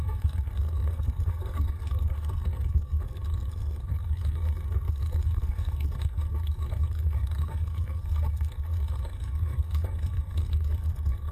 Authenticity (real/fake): fake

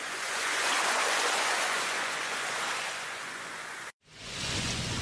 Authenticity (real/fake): fake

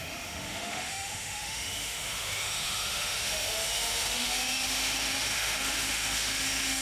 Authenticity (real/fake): fake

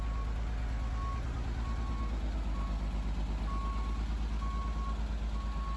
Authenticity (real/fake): real